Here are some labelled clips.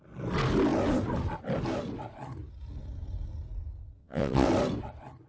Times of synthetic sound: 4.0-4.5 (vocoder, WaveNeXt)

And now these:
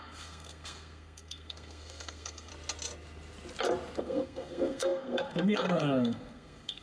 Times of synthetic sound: 0.0-2.5 (codec, SNAC); 4.0-6.8

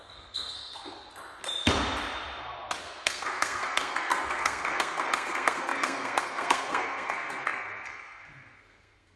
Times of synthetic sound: 0.0-1.1 (codec, SNAC); 2.8-9.2

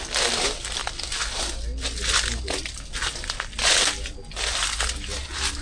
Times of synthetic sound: none

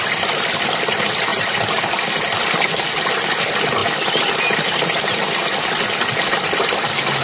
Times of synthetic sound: 1.3-1.9 (vocoder, BigVGAN v2)

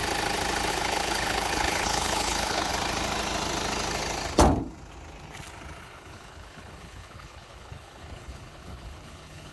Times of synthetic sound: 0.7-2.7 (codec, HILCodec); 5.8-9.5

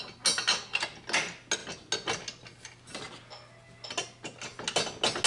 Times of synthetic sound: none